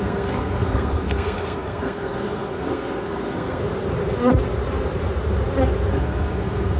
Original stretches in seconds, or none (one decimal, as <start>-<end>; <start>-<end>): 3.6-5.9